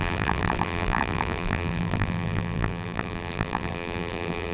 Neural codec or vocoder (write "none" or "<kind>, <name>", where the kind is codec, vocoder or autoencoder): vocoder, BigVGAN v2